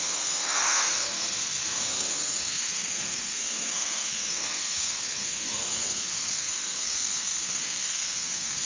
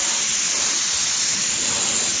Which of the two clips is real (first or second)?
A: second